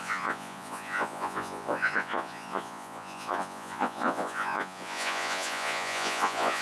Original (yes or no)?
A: no